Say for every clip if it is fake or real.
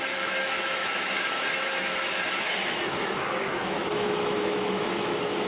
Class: fake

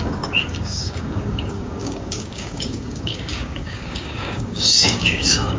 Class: fake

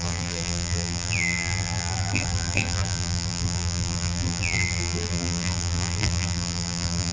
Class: fake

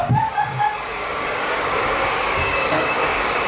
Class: fake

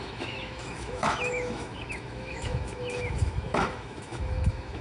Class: fake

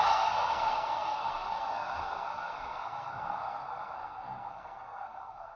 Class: fake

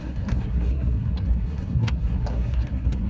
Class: fake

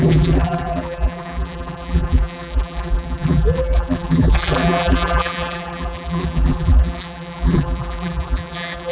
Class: fake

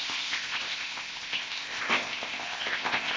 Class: fake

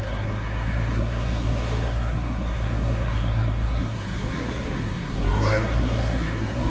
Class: fake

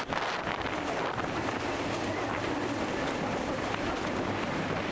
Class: real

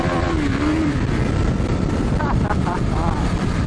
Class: fake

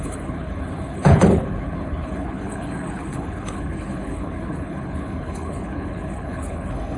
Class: fake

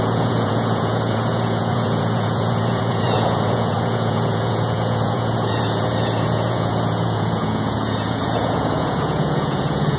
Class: fake